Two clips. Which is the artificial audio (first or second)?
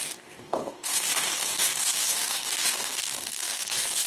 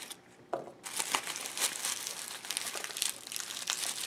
first